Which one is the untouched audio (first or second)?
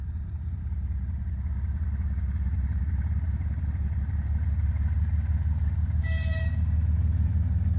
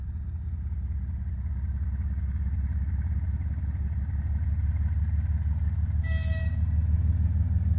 second